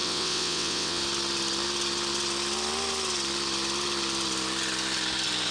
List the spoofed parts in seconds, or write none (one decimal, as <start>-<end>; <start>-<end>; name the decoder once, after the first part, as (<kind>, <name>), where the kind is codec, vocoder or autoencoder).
0.0-1.0 (vocoder, WaveNeXt)